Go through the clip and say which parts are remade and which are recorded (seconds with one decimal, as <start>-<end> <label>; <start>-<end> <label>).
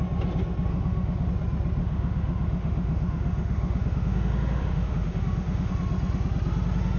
0.0-0.7 recorded; 0.7-1.3 remade; 1.3-1.8 recorded; 1.8-5.7 remade; 5.7-7.0 recorded